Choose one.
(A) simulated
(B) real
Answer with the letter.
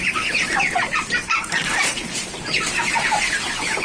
A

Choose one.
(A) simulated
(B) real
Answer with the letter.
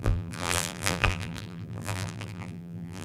A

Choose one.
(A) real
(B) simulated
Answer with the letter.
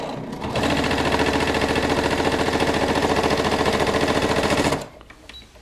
A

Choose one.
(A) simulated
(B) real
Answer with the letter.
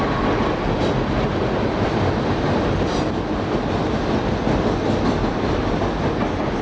B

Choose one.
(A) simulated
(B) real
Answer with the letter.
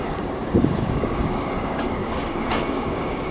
A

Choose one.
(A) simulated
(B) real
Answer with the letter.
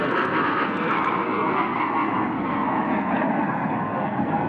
A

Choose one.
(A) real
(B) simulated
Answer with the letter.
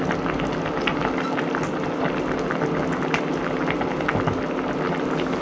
A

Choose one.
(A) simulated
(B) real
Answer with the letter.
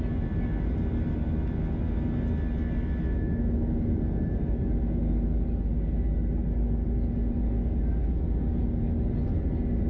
B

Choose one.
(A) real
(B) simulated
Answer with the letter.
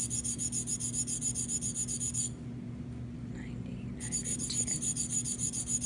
A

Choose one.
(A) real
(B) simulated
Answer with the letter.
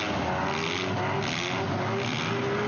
A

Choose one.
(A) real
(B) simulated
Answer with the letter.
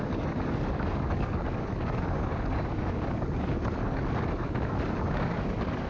B